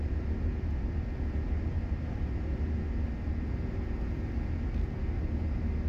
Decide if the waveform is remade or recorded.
recorded